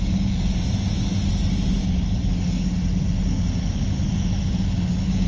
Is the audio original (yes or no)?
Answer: yes